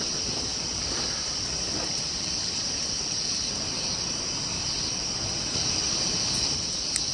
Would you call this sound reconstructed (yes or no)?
no